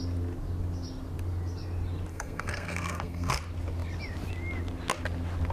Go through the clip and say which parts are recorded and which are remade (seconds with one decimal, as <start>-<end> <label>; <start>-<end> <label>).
0.0-2.1 recorded; 2.1-3.3 remade; 3.3-5.5 recorded

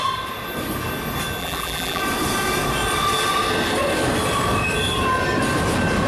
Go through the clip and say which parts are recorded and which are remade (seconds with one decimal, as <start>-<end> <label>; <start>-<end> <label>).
0.0-1.4 recorded; 1.4-2.0 remade; 2.0-6.1 recorded

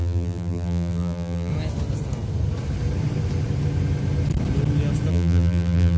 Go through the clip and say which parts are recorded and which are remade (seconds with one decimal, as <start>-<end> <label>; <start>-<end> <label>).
0.0-1.5 remade; 1.5-5.1 recorded; 5.1-6.0 remade

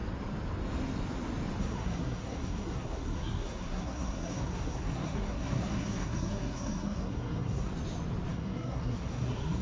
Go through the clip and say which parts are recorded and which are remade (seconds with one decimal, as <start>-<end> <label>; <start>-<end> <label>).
0.0-1.6 recorded; 1.6-7.7 remade; 7.7-8.3 recorded; 8.3-9.6 remade

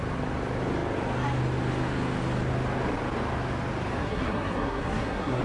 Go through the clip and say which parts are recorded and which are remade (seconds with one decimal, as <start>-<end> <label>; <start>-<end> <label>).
0.0-4.0 recorded; 4.0-5.4 remade

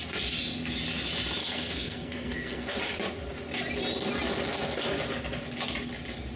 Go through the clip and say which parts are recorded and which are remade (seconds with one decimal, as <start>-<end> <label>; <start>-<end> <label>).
0.0-1.4 recorded; 1.4-2.8 remade; 2.8-6.4 recorded

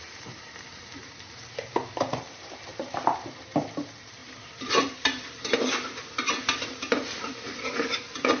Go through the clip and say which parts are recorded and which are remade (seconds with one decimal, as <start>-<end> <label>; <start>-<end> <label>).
0.0-8.4 remade